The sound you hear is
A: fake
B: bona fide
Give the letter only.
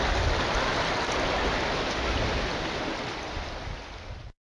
B